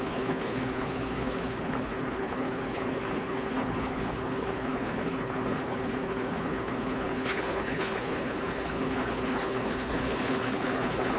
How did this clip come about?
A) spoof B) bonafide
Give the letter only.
A